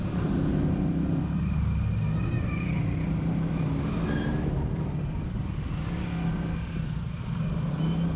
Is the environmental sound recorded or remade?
recorded